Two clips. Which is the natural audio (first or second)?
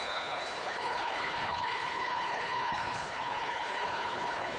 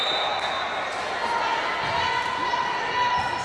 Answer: second